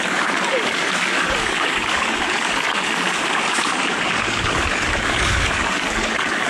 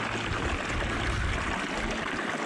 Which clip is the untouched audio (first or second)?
second